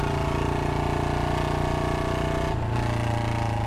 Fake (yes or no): no